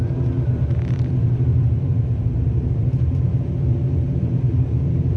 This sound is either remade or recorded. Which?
remade